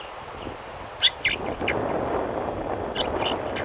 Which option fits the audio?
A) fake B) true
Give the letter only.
B